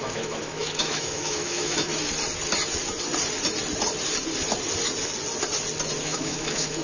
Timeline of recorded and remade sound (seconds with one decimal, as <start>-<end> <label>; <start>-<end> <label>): 0.0-1.9 remade; 1.9-6.0 recorded; 6.0-6.8 remade